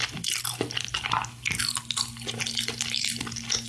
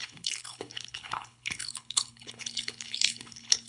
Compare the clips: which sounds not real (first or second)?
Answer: second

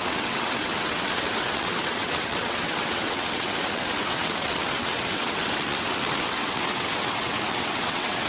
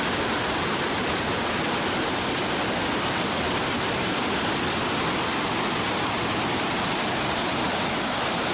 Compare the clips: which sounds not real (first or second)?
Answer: first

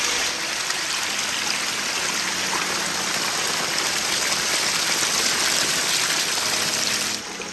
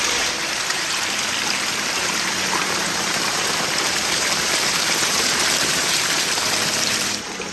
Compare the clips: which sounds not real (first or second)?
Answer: second